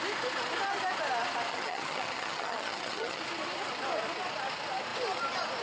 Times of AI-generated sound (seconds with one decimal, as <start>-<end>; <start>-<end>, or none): 1.5-3.2

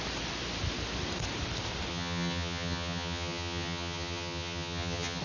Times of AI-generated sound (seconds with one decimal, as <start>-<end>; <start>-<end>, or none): 1.9-5.2